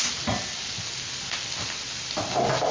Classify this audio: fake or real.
real